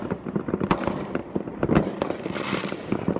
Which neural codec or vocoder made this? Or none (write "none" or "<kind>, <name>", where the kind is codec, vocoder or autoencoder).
none